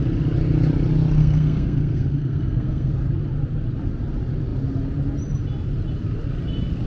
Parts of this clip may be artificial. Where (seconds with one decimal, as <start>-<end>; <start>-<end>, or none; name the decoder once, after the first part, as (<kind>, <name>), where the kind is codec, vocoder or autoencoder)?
1.2-2.9 (codec, SNAC)

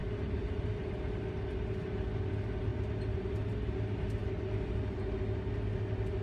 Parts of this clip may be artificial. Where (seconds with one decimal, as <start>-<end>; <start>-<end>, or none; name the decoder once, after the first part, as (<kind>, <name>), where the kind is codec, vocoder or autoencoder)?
0.0-1.3 (vocoder, BigVGAN v2); 2.7-3.3; 4.2-4.7